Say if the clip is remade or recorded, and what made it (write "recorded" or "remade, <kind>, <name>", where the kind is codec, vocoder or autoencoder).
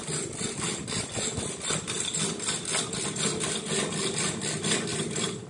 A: recorded